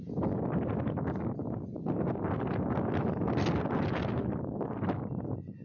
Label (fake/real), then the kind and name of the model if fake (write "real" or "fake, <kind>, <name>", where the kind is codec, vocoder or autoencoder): real